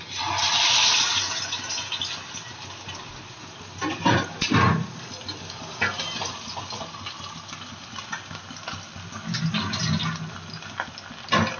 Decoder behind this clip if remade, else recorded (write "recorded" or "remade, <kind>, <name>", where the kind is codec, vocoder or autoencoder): recorded